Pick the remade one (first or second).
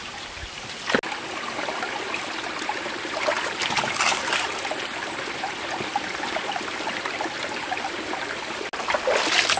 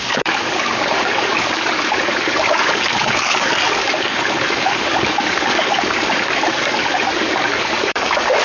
second